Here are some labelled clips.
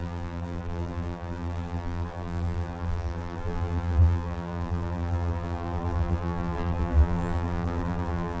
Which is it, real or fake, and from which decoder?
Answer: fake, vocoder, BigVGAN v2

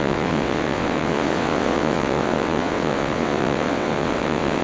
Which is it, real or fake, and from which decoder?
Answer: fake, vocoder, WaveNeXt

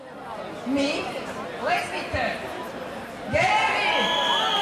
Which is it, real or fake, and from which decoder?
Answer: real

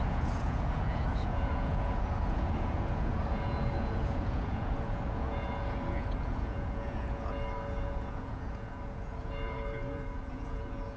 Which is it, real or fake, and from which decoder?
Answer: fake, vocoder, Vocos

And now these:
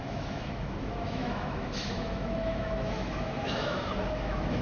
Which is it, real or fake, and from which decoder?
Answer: fake, autoencoder, DAC-VAE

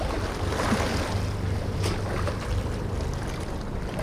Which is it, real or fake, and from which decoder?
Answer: real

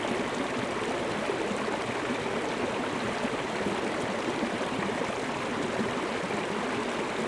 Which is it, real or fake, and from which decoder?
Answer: real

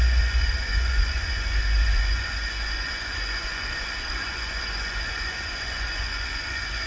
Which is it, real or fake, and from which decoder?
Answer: fake, vocoder, Vocos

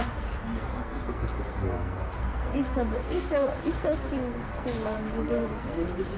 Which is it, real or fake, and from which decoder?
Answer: fake, codec, SNAC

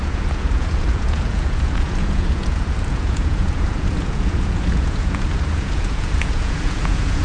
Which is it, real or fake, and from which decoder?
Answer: fake, vocoder, Vocos